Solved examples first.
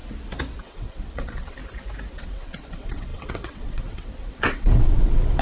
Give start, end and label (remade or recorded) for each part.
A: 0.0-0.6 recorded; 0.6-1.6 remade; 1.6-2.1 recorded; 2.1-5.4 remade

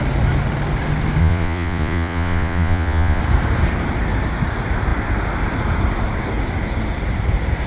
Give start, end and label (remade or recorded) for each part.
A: 0.0-1.2 recorded; 1.2-3.2 remade; 3.2-7.7 recorded